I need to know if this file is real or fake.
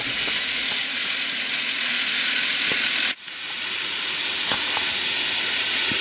fake